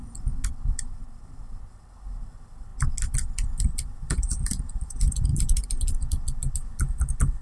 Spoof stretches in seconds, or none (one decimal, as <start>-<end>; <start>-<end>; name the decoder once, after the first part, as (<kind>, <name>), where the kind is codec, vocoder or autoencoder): 5.3-6.0 (vocoder, BigVGAN v2)